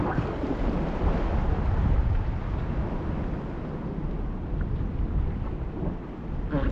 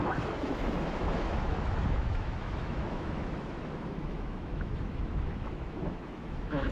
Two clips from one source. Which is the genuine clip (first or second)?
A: first